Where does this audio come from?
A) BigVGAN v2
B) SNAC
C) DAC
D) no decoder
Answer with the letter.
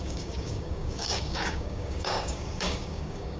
C